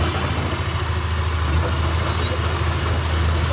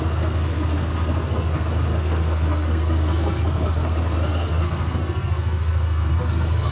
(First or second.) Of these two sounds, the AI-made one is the second